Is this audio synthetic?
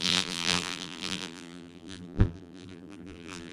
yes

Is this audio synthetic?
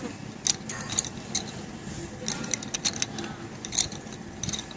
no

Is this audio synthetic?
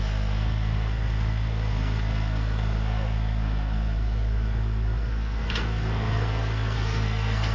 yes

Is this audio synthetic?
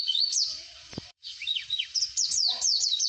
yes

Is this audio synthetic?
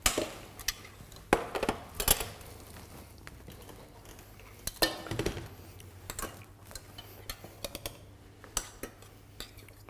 no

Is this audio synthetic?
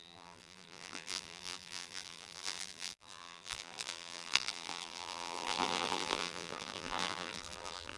yes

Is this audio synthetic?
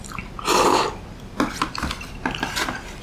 no